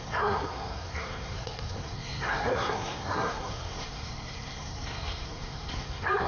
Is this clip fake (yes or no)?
yes